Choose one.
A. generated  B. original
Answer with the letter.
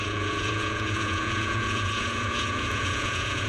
A